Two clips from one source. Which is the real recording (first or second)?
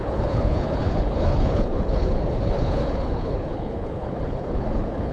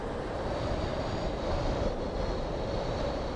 second